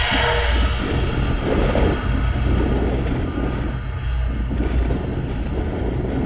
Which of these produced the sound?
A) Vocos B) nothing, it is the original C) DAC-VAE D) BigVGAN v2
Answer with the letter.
B